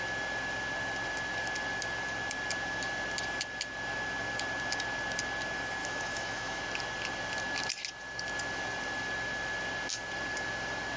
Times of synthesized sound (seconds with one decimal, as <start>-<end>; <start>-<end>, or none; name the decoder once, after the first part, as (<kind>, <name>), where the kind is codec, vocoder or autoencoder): 5.8-6.6 (autoencoder, DAC-VAE)